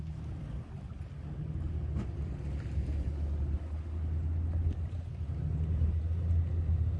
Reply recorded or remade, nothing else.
recorded